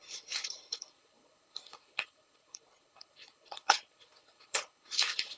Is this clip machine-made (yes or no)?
yes